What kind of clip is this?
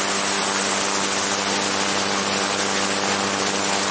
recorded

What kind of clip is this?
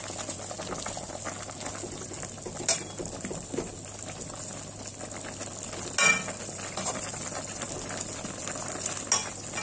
recorded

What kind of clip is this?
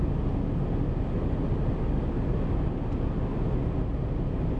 recorded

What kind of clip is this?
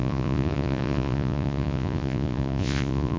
remade